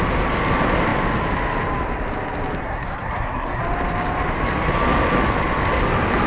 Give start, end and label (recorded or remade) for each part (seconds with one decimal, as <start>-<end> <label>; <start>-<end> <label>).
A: 0.0-2.6 recorded; 2.6-3.6 remade; 3.6-6.3 recorded